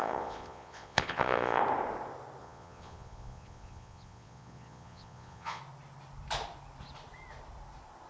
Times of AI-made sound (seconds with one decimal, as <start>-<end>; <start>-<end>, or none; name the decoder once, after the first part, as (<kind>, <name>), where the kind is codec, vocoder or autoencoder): 0.0-1.6 (vocoder, Vocos); 2.4-5.6